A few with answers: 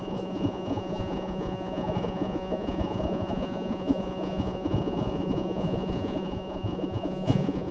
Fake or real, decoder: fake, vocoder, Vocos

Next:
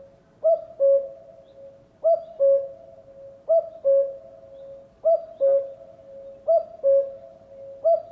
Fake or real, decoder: real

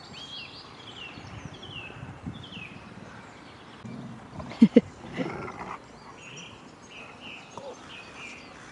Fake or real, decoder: real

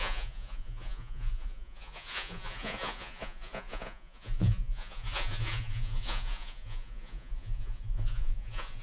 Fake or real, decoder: fake, vocoder, Vocos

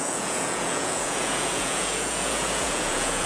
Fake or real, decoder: fake, vocoder, Vocos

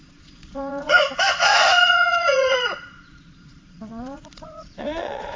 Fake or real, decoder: fake, vocoder, Vocos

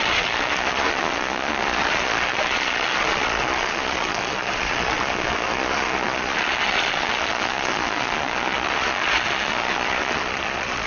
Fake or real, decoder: fake, vocoder, Vocos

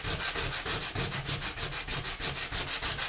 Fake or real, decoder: real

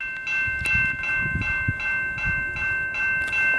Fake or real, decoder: real